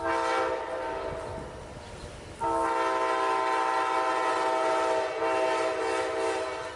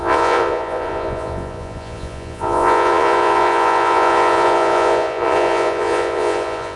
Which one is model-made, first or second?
second